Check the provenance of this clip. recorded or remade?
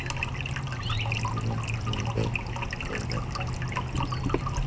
recorded